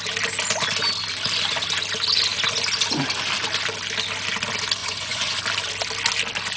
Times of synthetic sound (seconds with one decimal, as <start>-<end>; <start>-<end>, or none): 4.8-5.4